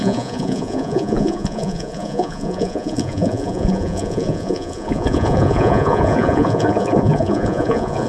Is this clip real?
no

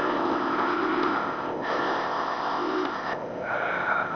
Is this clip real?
no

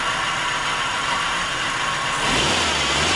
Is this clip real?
yes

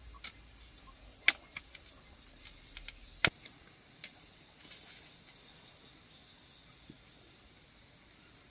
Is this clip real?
yes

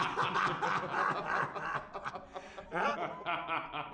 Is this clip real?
yes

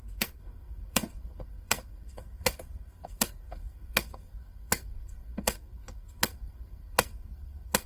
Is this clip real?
no